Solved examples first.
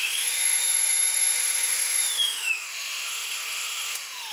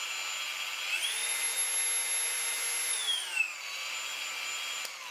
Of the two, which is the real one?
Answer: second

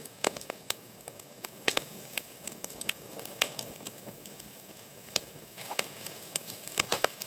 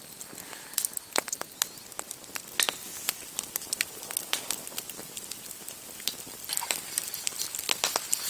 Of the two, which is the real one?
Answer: second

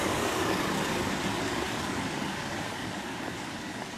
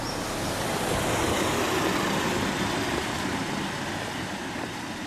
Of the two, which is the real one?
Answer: second